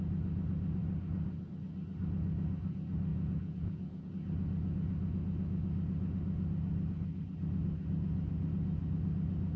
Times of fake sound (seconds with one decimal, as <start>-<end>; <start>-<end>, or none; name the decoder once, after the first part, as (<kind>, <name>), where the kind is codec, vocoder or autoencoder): 3.1-4.1 (vocoder, Vocos)